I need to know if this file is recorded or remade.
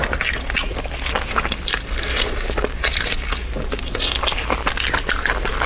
recorded